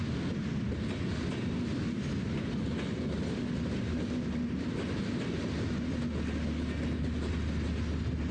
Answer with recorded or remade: recorded